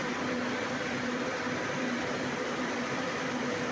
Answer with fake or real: fake